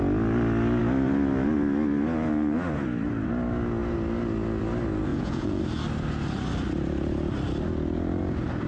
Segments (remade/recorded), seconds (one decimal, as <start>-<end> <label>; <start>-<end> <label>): 0.0-5.1 recorded; 5.1-5.6 remade; 5.6-8.7 recorded